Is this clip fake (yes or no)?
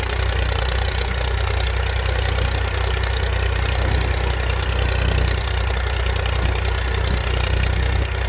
no